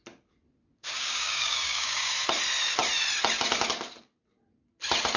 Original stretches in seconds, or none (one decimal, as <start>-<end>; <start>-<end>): 0.0-0.8; 2.1-5.2